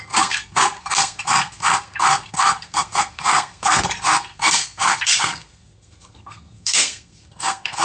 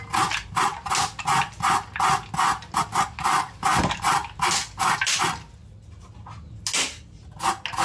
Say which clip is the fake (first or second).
first